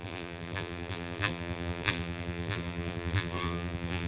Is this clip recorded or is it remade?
remade